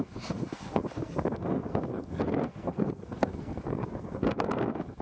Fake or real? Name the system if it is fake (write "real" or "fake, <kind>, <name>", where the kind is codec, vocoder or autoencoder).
fake, codec, SNAC